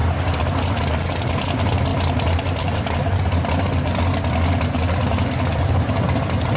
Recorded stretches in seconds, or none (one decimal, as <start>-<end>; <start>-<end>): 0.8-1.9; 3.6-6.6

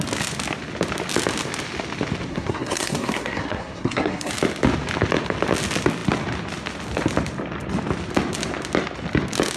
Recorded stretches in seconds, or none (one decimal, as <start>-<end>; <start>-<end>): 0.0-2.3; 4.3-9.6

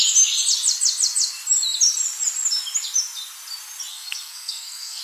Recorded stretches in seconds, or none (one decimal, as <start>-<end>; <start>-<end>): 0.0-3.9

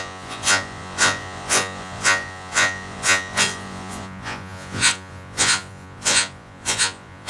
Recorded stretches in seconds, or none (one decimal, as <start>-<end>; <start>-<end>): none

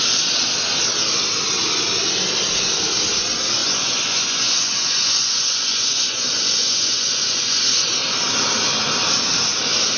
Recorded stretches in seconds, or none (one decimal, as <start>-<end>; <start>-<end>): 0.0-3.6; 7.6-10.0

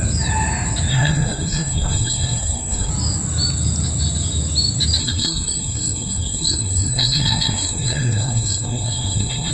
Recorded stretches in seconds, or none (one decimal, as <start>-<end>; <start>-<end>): 0.0-0.9; 2.9-5.0